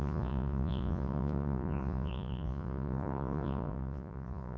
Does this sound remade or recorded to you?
remade